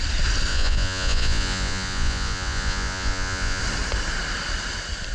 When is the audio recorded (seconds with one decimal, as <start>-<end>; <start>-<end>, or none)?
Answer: 0.0-0.5; 3.6-5.1